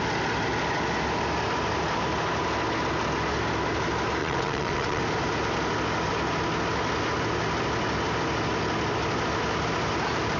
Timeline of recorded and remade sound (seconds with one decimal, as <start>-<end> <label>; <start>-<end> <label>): 0.0-4.2 recorded; 4.2-5.0 remade; 5.0-10.4 recorded